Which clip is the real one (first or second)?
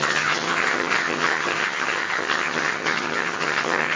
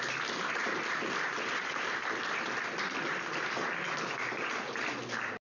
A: second